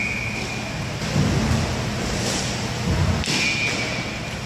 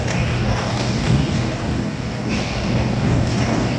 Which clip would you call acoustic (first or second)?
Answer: first